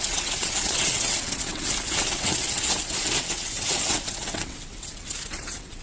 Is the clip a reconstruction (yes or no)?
yes